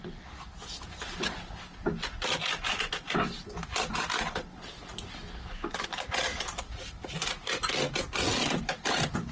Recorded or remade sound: recorded